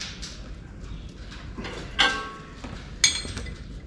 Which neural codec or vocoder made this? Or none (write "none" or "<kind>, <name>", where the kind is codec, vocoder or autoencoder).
none